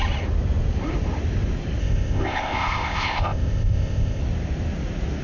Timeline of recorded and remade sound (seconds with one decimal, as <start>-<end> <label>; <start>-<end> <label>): 0.0-1.8 recorded; 1.8-4.2 remade; 4.2-5.2 recorded